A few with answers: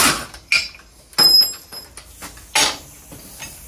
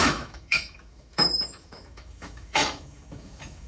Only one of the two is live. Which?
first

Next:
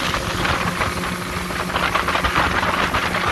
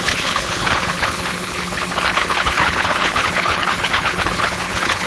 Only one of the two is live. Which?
first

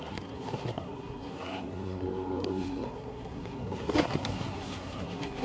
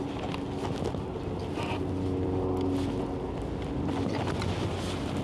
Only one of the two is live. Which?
second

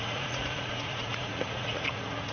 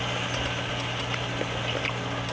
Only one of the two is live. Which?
second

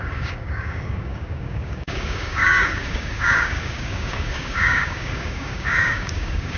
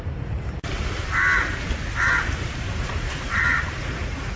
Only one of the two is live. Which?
second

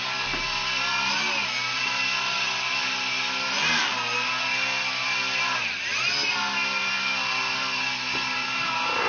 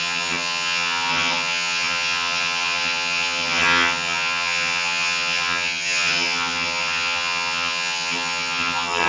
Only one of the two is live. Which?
first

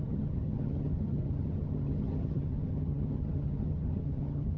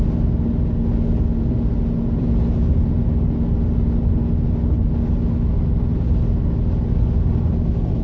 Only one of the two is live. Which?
second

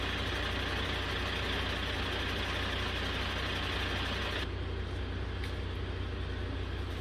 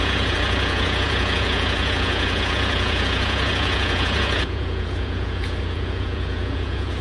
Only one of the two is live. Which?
first